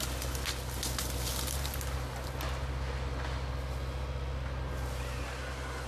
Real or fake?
real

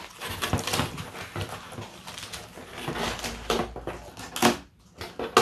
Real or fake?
real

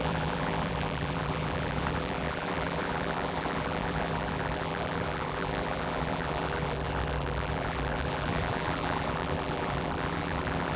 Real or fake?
fake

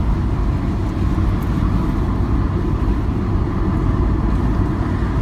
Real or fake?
real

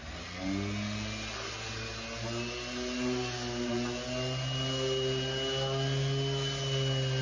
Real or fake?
real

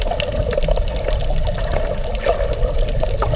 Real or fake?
real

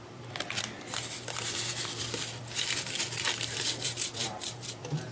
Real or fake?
fake